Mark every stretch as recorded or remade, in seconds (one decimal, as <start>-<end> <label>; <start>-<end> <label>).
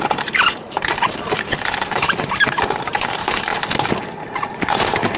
0.0-3.5 remade; 3.5-4.2 recorded; 4.2-5.2 remade